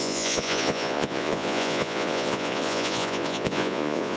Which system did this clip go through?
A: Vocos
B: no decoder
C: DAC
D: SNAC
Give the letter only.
A